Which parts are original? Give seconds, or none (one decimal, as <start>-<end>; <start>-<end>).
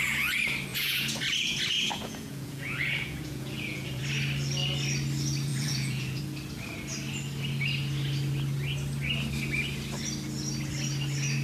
0.0-0.7; 4.0-5.5; 6.2-11.4